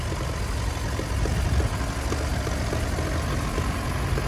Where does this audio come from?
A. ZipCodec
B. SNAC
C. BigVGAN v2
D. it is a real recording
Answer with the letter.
D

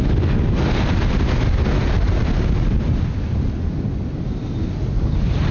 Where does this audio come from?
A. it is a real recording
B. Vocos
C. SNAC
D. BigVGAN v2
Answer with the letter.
A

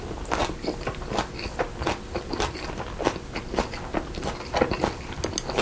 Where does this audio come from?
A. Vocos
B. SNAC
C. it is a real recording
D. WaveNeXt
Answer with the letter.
C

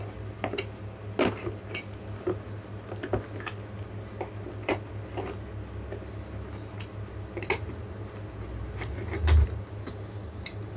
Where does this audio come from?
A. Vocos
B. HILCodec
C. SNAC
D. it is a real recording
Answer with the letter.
D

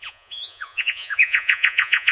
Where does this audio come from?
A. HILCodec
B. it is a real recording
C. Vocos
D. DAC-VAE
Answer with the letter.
C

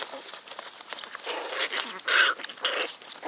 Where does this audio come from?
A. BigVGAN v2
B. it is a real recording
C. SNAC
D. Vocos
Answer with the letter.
B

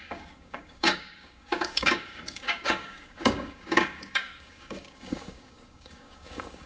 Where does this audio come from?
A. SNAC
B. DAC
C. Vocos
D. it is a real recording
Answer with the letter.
B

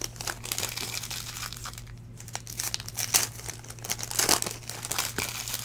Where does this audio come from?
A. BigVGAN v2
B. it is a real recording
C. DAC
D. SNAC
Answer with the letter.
B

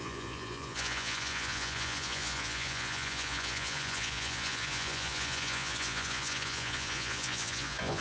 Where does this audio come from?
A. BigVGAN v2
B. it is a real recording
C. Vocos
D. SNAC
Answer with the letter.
C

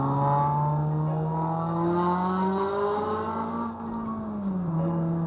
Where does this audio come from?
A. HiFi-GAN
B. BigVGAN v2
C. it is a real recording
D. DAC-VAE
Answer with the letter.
C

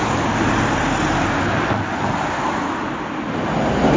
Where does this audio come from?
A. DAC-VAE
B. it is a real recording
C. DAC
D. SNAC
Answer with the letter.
B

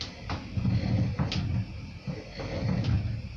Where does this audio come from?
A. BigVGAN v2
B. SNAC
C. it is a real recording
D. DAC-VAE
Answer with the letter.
C